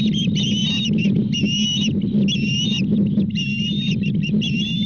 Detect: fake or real real